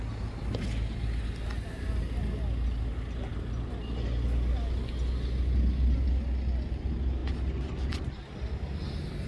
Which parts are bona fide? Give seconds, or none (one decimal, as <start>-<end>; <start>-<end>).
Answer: 0.0-9.3